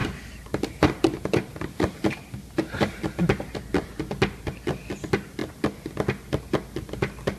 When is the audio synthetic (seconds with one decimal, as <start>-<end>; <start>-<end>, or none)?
0.0-3.6